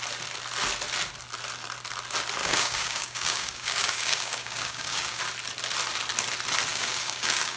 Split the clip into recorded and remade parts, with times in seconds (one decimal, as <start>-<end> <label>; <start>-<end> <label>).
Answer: 0.0-2.4 recorded; 2.4-5.2 remade; 5.2-6.7 recorded; 6.7-7.6 remade